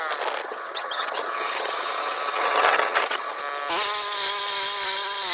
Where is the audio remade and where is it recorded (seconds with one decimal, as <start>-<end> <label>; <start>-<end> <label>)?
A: 0.0-0.4 recorded; 0.4-3.4 remade; 3.4-5.3 recorded

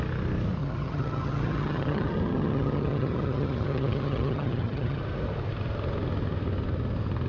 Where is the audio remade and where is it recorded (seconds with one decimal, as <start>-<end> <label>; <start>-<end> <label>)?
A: 0.0-0.6 recorded; 0.6-5.0 remade; 5.0-7.3 recorded